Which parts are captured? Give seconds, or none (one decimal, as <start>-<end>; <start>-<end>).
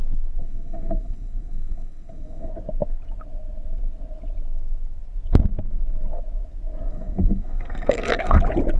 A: 0.0-0.4; 2.5-6.9; 8.4-8.8